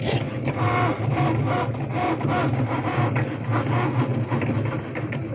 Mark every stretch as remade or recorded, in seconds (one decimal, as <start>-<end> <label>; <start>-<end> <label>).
0.0-5.3 recorded